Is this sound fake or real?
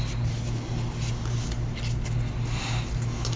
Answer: real